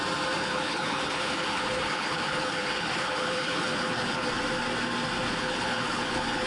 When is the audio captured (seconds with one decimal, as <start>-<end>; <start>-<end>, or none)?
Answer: 0.0-0.4; 4.3-5.3